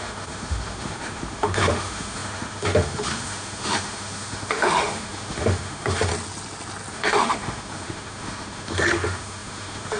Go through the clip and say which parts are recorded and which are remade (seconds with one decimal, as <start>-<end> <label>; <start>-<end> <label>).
0.0-6.1 remade; 6.1-6.9 recorded; 6.9-10.0 remade